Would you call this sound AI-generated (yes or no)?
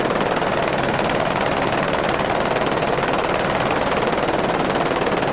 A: no